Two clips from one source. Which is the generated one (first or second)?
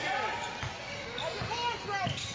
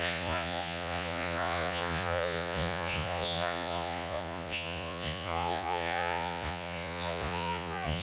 second